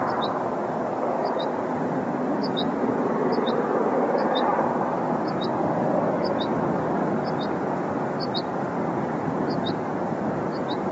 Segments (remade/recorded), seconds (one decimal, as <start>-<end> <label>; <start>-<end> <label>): 0.0-2.4 recorded; 2.4-3.1 remade; 3.1-10.9 recorded